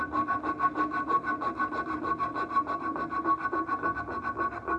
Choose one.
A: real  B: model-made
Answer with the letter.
A